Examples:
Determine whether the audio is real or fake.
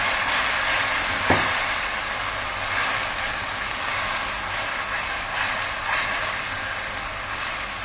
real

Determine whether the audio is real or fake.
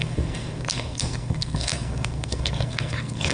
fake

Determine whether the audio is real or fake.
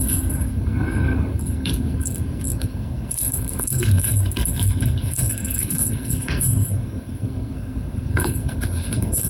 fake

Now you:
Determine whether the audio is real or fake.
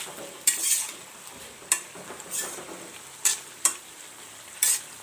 real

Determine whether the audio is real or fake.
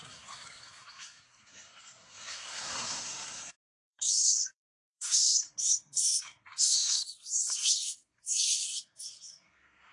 fake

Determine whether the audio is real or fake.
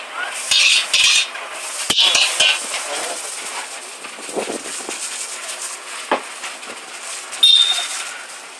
real